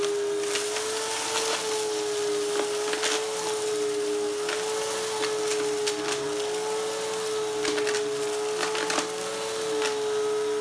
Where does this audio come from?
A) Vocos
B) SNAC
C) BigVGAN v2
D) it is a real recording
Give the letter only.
D